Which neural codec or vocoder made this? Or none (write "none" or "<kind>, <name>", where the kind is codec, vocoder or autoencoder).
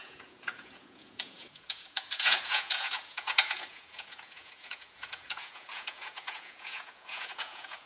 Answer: vocoder, Vocos